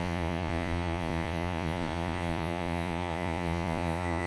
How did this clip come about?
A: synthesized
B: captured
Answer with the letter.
A